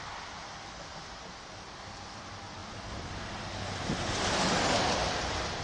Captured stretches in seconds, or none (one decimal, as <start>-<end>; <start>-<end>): none